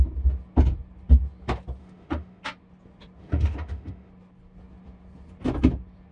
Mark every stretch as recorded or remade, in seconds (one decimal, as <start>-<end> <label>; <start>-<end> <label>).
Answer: 0.0-1.8 recorded; 1.8-2.4 remade; 2.4-3.2 recorded; 3.2-4.1 remade; 4.1-6.1 recorded